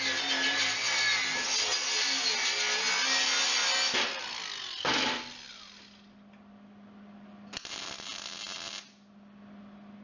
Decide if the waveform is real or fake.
real